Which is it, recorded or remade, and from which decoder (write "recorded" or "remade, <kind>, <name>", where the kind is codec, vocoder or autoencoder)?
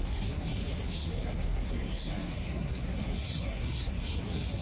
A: remade, codec, SNAC